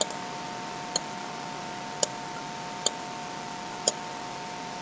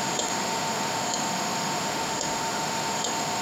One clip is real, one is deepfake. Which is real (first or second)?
first